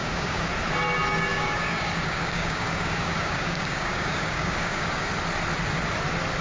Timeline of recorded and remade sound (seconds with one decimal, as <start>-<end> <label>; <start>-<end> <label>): 0.0-0.5 remade; 0.5-1.3 recorded; 1.3-5.1 remade; 5.1-6.4 recorded

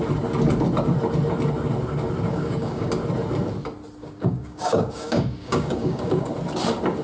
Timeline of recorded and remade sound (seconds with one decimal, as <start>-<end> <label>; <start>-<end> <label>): 0.0-2.3 recorded; 2.3-2.9 remade; 2.9-4.0 recorded; 4.0-6.3 remade; 6.3-7.0 recorded

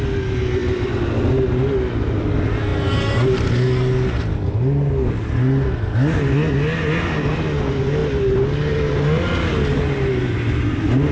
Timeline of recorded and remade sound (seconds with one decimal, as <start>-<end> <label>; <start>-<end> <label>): 0.0-11.1 recorded

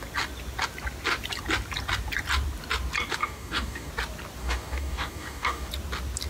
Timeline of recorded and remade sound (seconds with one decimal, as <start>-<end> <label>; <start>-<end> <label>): 0.0-3.2 recorded; 3.2-3.9 remade; 3.9-4.4 recorded; 4.4-5.7 remade; 5.7-6.3 recorded

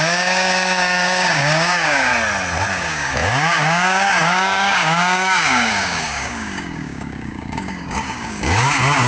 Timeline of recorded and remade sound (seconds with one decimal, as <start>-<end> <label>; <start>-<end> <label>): 0.0-2.1 remade; 2.1-2.7 recorded; 2.7-9.1 remade

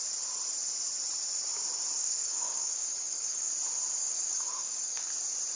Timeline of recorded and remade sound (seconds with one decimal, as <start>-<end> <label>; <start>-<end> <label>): 0.0-2.0 recorded; 2.0-3.5 remade; 3.5-4.0 recorded; 4.0-5.1 remade; 5.1-5.6 recorded

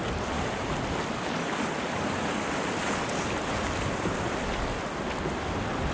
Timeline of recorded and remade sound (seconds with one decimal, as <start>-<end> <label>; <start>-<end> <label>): 0.0-5.9 recorded